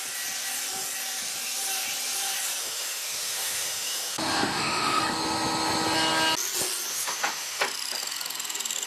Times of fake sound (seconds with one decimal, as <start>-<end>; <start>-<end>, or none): 2.6-5.0; 6.9-7.6